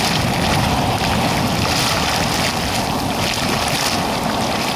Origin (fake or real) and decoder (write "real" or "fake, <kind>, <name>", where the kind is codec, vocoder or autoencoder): real